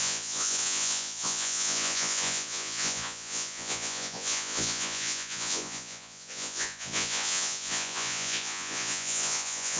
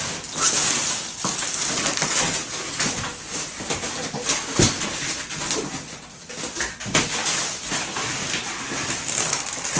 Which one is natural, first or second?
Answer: second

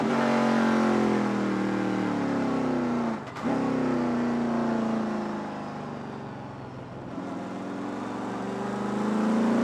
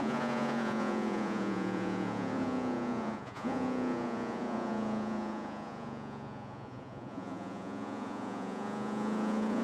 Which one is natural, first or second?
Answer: first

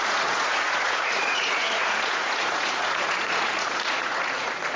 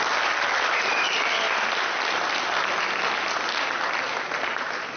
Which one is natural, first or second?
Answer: second